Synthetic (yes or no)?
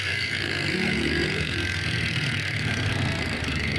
yes